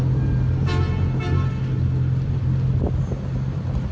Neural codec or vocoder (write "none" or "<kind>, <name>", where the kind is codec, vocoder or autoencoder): none